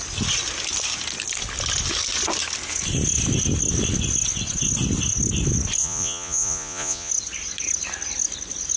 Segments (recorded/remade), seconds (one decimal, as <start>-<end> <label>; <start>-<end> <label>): 0.0-5.8 recorded; 5.8-7.1 remade; 7.1-8.8 recorded